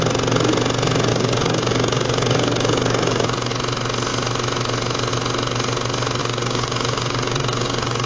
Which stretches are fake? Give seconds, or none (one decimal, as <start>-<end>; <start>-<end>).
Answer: 1.1-3.5; 6.2-8.1